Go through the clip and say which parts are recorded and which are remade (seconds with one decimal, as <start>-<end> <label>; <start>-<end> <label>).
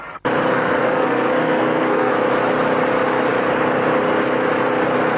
0.0-0.5 recorded; 0.5-2.1 remade; 2.1-5.2 recorded